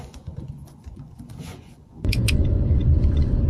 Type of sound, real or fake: fake